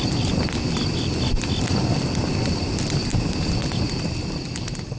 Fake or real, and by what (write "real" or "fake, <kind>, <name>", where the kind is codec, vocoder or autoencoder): real